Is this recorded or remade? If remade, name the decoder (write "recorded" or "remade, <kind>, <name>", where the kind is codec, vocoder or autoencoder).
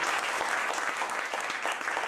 recorded